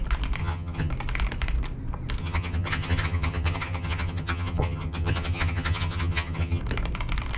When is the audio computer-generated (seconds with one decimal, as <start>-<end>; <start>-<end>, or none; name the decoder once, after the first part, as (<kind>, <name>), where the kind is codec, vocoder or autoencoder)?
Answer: 0.4-0.9 (vocoder, HiFi-GAN); 2.2-6.6